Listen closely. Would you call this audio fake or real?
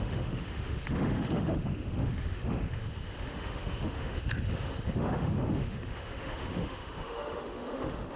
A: fake